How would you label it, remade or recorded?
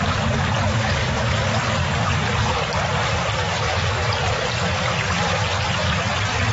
recorded